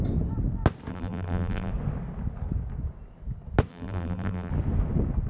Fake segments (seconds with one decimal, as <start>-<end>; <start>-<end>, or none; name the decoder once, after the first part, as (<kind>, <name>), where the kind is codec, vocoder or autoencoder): 0.9-1.7 (vocoder, BigVGAN v2); 3.7-4.5